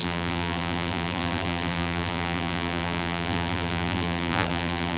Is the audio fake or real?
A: fake